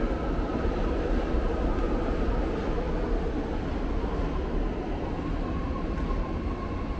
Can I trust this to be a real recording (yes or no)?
yes